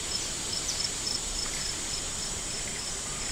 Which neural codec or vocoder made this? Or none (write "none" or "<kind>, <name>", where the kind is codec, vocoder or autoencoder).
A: vocoder, BigVGAN v2